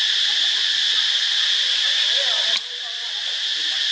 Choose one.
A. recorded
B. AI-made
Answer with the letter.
A